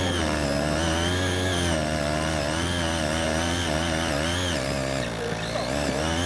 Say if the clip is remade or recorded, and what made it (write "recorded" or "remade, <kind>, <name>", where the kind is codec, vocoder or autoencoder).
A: recorded